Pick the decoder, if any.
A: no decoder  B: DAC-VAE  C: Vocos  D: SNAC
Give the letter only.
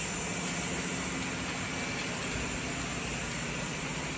A